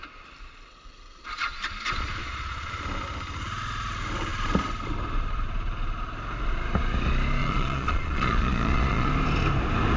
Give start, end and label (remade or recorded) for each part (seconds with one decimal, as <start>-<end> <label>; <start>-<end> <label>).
0.0-1.1 recorded; 1.1-1.6 remade; 1.6-2.2 recorded; 2.2-2.7 remade; 2.7-7.4 recorded; 7.4-9.1 remade; 9.1-10.0 recorded